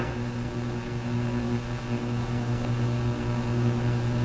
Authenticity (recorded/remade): remade